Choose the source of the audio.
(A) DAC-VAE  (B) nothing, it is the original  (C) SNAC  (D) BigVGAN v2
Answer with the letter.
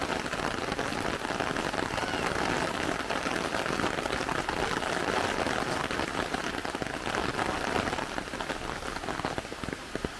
B